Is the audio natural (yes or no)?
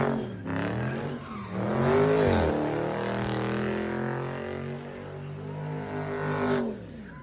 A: yes